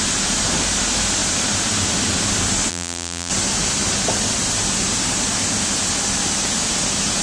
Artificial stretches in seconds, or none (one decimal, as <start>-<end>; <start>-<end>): 2.7-3.3